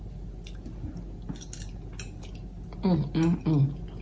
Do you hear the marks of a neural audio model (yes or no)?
no